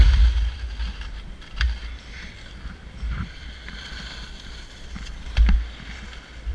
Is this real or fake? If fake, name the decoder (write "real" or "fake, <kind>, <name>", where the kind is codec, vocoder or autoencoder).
real